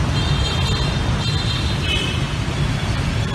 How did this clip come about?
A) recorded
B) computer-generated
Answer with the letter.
A